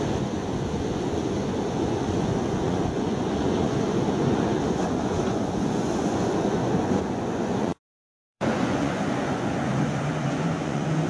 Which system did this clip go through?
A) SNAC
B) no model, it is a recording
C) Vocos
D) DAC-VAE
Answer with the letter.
C